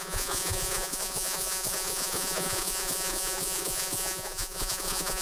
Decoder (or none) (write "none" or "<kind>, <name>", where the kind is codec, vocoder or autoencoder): vocoder, Vocos